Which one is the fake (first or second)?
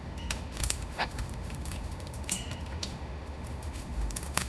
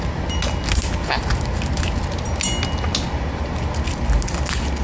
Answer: first